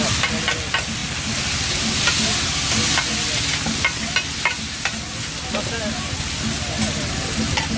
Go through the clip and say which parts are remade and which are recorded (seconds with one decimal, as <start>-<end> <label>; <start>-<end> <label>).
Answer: 0.0-7.8 recorded